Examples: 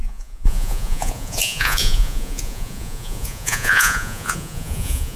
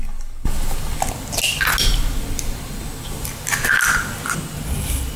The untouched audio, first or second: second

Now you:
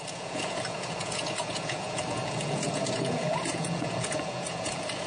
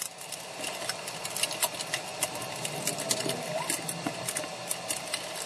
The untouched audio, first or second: second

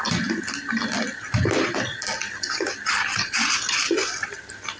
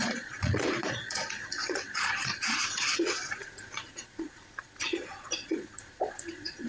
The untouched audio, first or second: first